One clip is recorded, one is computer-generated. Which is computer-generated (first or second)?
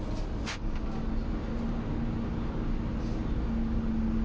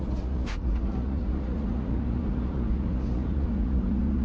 second